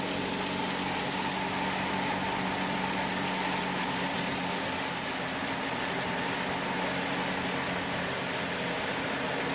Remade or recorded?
recorded